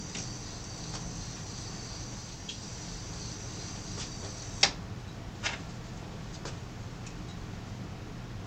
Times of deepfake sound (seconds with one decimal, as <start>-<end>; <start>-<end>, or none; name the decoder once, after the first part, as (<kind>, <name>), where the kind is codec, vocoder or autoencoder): 2.2-2.8 (vocoder, BigVGAN v2)